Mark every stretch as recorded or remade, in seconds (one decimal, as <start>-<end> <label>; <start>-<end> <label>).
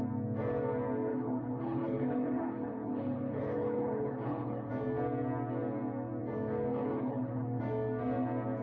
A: 0.0-1.1 recorded; 1.1-4.7 remade; 4.7-6.7 recorded; 6.7-7.6 remade; 7.6-8.6 recorded